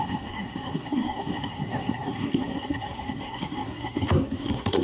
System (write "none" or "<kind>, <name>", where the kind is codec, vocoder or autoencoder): codec, SNAC